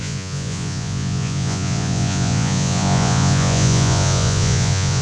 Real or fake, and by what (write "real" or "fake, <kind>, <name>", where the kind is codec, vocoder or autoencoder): fake, vocoder, Vocos